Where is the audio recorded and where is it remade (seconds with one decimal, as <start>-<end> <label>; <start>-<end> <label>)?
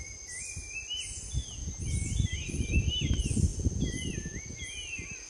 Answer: 0.0-5.3 recorded